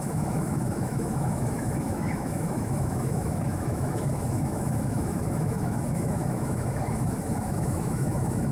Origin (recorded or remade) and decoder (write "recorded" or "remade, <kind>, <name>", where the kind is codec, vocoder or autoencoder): remade, autoencoder, DAC-VAE